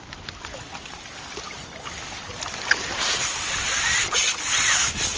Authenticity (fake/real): real